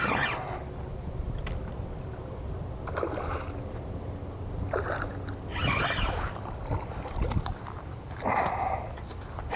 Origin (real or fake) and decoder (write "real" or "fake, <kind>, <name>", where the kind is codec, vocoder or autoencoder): real